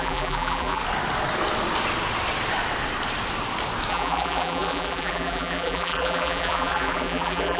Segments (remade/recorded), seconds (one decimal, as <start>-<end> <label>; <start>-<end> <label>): 0.0-0.8 remade; 0.8-3.9 recorded; 3.9-7.6 remade